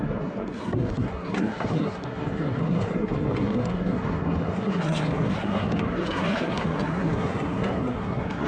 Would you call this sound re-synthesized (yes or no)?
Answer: yes